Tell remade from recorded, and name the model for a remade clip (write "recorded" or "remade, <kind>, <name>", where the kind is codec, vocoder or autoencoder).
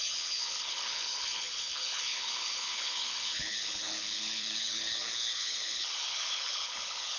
remade, codec, HILCodec